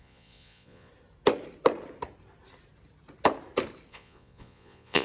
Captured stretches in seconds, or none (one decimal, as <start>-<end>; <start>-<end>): 0.9-3.9